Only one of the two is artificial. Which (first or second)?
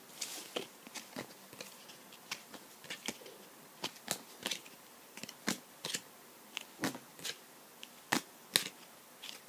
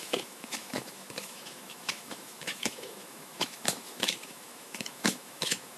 second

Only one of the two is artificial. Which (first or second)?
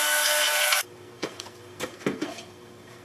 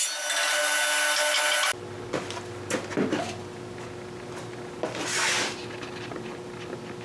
first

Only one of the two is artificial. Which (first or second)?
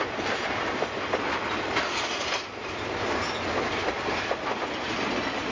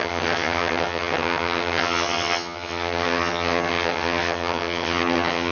second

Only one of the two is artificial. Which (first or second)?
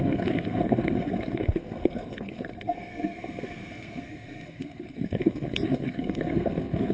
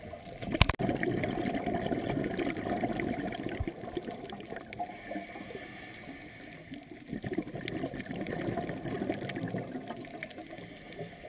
first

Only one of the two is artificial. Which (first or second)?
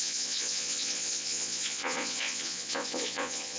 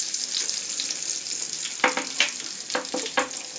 first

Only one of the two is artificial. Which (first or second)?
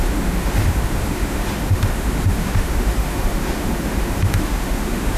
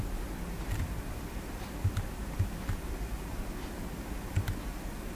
first